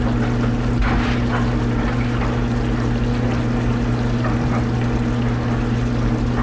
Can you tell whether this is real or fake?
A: real